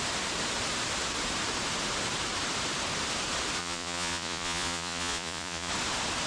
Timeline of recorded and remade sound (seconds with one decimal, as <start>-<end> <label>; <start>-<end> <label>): 0.0-3.6 recorded; 3.6-5.7 remade; 5.7-6.3 recorded